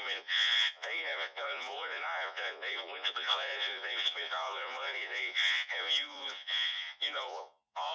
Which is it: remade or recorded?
remade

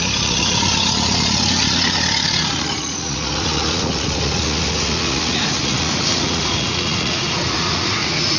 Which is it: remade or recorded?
remade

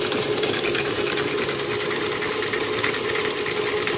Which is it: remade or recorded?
recorded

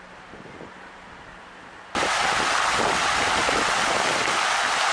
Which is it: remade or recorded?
recorded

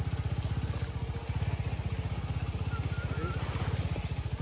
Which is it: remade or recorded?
recorded